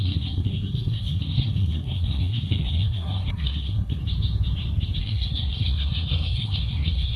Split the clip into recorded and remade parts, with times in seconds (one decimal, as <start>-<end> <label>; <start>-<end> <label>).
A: 0.0-4.0 remade; 4.0-5.0 recorded; 5.0-7.2 remade